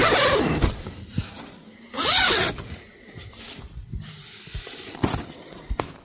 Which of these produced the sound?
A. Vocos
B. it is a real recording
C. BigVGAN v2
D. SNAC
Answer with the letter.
B